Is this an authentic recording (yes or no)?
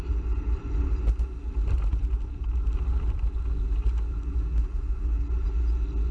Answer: yes